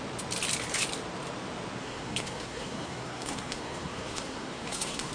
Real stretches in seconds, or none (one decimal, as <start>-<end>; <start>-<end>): 0.0-1.8